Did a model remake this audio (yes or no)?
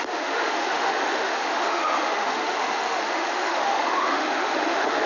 yes